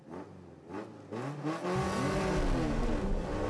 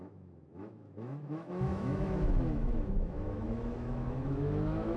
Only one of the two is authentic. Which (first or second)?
first